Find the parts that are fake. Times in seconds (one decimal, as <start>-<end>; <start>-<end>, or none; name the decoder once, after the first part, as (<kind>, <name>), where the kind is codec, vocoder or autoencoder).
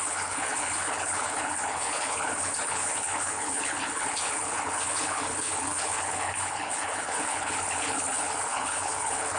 0.0-9.4 (codec, HILCodec)